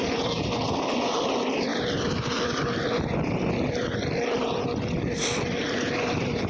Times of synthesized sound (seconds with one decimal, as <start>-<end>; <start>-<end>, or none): 1.7-2.4

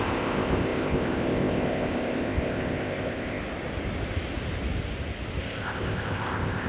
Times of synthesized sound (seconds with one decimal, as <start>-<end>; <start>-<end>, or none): 0.0-3.4; 5.4-6.7